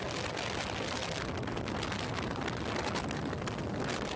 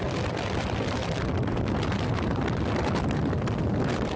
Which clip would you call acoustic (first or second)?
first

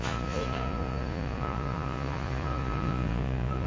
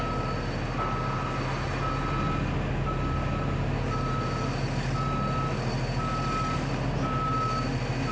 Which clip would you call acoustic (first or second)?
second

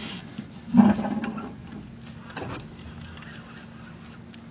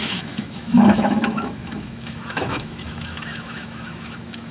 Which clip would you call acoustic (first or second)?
first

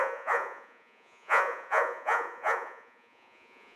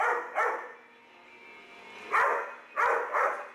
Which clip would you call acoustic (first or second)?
second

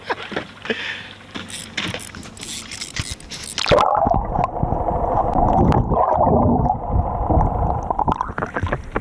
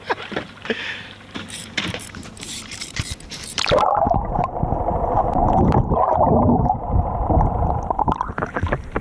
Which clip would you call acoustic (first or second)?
first